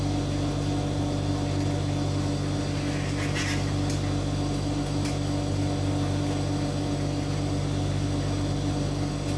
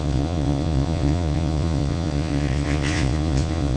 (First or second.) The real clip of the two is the first